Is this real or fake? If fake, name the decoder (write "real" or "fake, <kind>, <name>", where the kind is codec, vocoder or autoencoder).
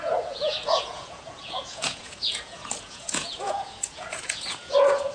fake, vocoder, Vocos